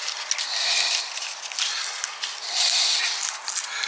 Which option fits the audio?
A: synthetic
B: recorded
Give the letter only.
B